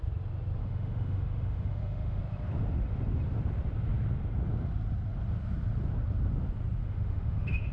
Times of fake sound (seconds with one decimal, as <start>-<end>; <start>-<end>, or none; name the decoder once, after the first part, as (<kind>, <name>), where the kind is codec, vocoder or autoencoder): 0.6-2.2 (autoencoder, DAC-VAE); 6.8-7.7